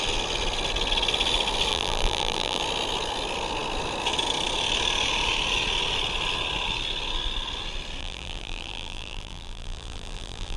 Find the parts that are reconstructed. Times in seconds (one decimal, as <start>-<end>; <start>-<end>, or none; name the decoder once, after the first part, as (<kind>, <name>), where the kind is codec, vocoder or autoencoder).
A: 1.7-2.6 (vocoder, BigVGAN v2); 8.0-10.6